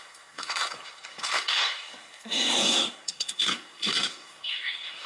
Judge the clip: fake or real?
fake